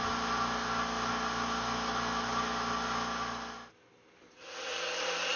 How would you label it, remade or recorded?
recorded